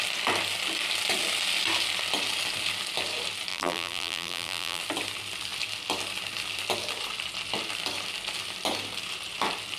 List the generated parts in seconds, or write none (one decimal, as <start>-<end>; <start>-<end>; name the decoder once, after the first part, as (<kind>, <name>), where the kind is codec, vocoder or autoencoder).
3.5-4.8 (vocoder, BigVGAN v2)